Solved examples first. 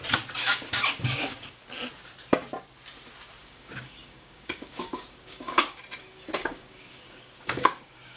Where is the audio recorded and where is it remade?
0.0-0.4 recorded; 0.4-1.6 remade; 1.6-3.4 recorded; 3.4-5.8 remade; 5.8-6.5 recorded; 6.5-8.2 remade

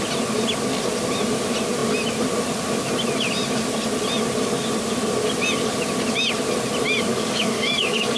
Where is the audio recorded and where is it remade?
0.0-7.1 recorded; 7.1-8.2 remade

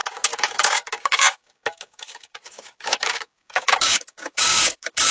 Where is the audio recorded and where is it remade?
0.0-5.1 remade

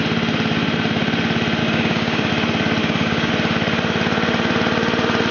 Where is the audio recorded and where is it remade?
0.0-1.6 recorded; 1.6-2.3 remade; 2.3-2.8 recorded; 2.8-3.3 remade; 3.3-5.3 recorded